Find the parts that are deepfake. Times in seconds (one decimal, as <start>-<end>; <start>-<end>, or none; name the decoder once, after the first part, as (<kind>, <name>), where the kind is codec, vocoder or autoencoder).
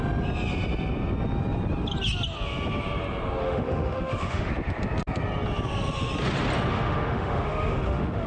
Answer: 3.4-4.5 (autoencoder, DAC-VAE); 6.7-8.3